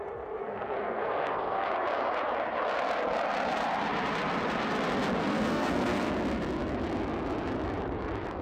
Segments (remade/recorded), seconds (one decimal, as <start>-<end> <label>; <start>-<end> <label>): 0.0-0.4 recorded; 0.4-1.7 remade; 1.7-5.2 recorded; 5.2-6.1 remade; 6.1-8.4 recorded